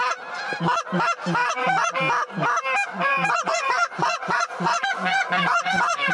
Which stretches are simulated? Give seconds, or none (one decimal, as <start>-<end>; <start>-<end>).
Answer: 1.4-2.0; 2.9-6.1